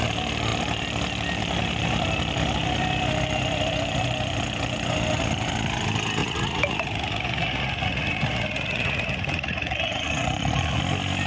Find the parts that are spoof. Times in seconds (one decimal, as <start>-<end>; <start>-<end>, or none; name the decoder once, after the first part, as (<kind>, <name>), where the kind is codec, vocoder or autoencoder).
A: 6.2-10.8 (vocoder, Vocos)